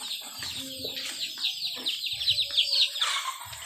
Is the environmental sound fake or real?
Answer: real